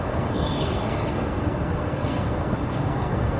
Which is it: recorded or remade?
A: remade